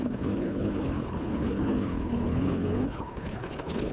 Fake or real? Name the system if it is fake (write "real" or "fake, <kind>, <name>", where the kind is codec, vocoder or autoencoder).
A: fake, codec, HILCodec